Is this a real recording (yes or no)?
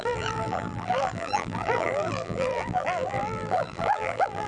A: no